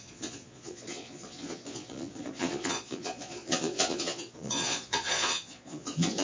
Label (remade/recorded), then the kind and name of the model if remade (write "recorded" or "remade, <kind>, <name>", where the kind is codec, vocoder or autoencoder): remade, vocoder, Vocos